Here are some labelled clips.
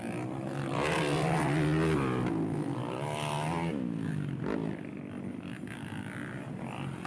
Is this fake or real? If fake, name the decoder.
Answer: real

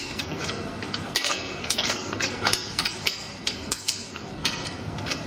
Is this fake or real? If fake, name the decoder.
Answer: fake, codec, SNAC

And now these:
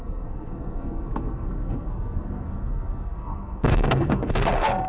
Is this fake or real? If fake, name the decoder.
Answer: fake, codec, SNAC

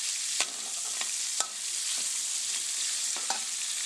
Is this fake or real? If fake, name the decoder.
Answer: real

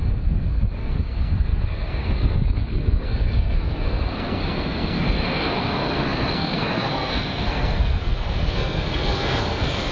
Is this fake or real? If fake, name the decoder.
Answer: fake, codec, SNAC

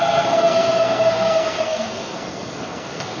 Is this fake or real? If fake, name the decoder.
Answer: fake, codec, SNAC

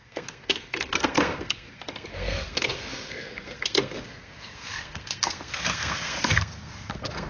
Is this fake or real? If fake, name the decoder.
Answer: fake, codec, SNAC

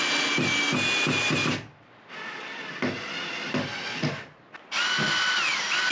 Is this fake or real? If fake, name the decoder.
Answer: real